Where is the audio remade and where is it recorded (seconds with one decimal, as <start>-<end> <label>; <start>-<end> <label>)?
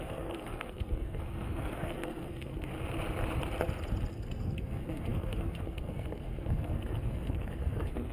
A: 0.0-2.7 remade; 2.7-4.1 recorded; 4.1-8.1 remade